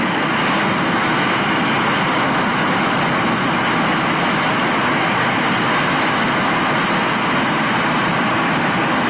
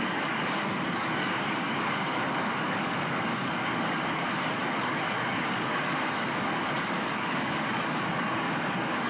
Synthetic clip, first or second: second